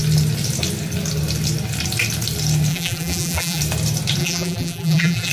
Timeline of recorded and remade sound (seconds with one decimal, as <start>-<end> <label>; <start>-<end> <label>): 0.0-2.7 recorded; 2.7-3.6 remade; 3.6-4.2 recorded; 4.2-5.3 remade